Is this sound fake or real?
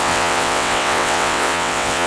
fake